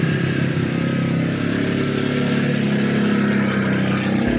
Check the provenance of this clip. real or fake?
real